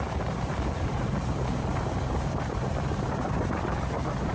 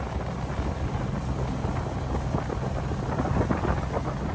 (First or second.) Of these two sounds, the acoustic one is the second